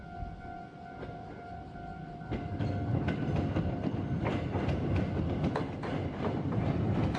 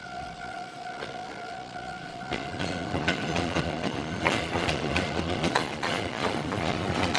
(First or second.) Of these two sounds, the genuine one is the first